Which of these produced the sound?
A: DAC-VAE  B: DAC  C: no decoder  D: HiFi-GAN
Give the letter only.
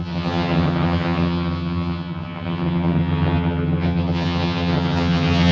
D